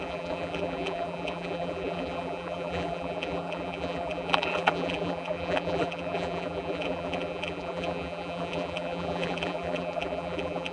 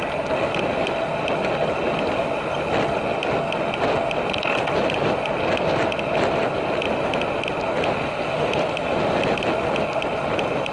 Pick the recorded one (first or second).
second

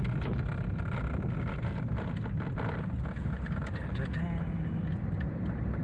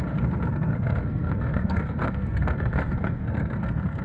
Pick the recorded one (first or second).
first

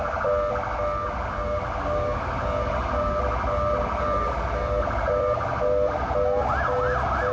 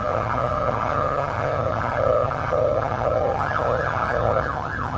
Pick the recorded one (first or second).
first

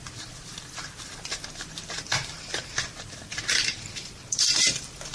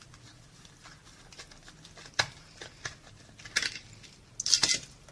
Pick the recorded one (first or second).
second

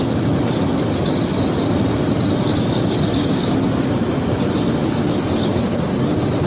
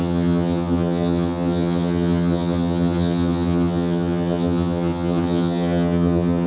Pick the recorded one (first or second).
first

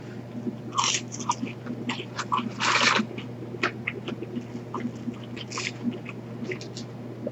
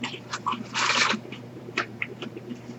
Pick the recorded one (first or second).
first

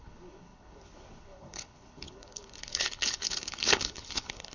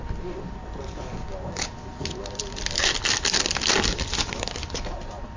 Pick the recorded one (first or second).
second